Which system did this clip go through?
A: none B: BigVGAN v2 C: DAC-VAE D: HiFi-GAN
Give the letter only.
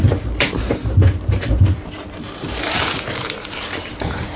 B